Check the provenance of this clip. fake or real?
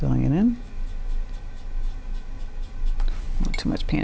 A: real